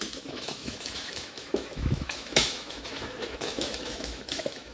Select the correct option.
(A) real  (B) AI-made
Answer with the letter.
B